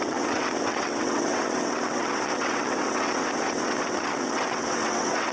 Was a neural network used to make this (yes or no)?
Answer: yes